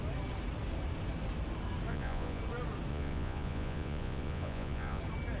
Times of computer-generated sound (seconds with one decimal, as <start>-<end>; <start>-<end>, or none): 1.9-2.4; 2.9-5.0